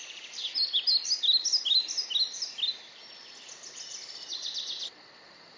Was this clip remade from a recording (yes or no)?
no